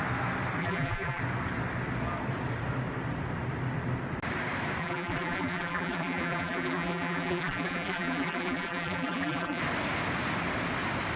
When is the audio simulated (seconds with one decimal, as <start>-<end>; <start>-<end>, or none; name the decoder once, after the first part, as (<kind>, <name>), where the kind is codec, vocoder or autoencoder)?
0.6-1.2 (vocoder, BigVGAN v2); 4.8-9.6